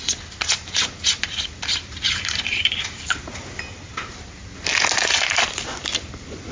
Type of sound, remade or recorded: recorded